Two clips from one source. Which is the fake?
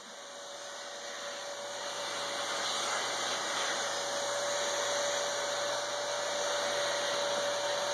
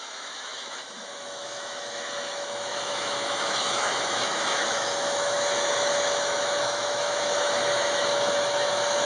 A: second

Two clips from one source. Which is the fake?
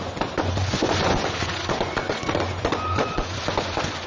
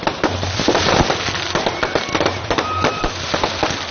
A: first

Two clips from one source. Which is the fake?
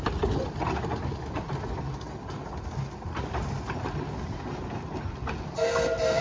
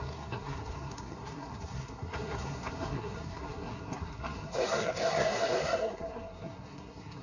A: second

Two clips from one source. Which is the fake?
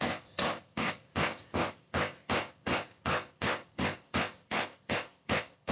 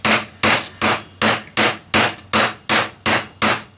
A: first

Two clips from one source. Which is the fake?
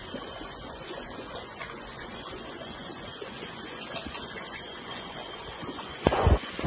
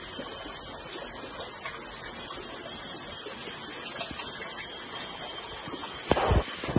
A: first